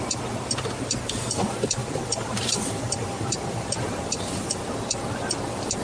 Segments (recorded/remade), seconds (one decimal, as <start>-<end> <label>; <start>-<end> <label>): 0.0-1.8 recorded; 1.8-4.3 remade; 4.3-5.8 recorded